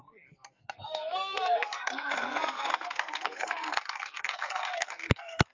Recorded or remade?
remade